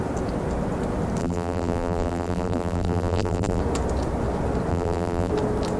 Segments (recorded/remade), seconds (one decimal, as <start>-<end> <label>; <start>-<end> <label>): 0.0-1.2 recorded; 1.2-3.6 remade; 3.6-4.7 recorded; 4.7-5.3 remade; 5.3-5.8 recorded